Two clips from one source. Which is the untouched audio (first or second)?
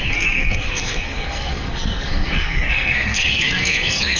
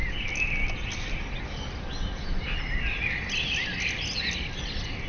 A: second